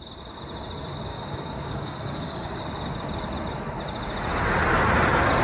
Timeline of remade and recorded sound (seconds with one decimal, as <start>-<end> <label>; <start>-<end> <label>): 0.0-1.1 recorded; 1.1-2.6 remade; 2.6-5.4 recorded

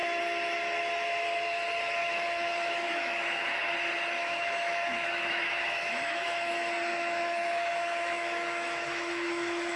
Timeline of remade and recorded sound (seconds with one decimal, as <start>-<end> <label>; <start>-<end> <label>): 0.0-2.0 recorded; 2.0-3.7 remade; 3.7-4.2 recorded; 4.2-6.5 remade; 6.5-6.9 recorded; 6.9-9.8 remade

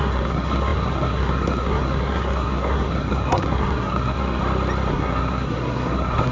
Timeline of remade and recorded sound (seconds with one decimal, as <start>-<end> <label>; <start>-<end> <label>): 0.0-4.4 remade; 4.4-4.9 recorded; 4.9-6.3 remade